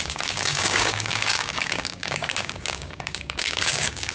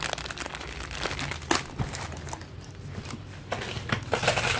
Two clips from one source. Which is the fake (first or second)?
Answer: first